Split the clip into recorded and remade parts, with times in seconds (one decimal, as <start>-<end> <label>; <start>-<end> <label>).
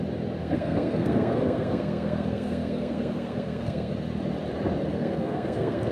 0.0-0.4 recorded; 0.4-3.9 remade; 3.9-4.9 recorded; 4.9-5.9 remade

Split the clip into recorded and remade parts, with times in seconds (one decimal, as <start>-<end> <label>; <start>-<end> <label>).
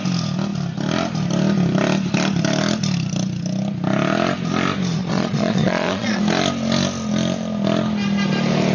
0.0-5.0 recorded; 5.0-6.2 remade; 6.2-8.7 recorded